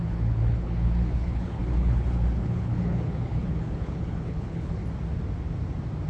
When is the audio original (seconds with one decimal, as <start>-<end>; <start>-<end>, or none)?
4.8-6.1